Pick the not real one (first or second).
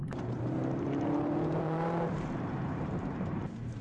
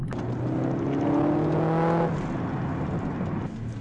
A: first